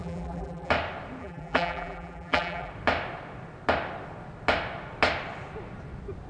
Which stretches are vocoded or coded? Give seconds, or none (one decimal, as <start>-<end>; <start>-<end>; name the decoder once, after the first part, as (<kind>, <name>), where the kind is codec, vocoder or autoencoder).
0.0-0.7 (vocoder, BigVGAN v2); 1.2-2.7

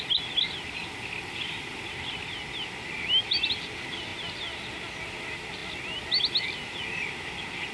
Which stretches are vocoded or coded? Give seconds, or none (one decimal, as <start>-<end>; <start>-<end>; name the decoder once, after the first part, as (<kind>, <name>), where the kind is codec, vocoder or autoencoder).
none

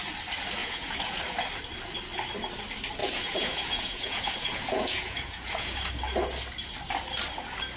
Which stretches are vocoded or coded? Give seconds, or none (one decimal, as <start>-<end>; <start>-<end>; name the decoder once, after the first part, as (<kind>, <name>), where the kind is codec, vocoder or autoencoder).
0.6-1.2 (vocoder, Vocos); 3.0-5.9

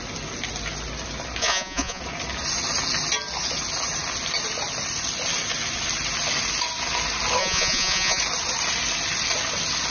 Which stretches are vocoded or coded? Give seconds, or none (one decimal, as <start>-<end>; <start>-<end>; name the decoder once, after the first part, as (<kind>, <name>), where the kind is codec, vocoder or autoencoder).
1.4-2.0 (vocoder, Vocos); 7.4-8.2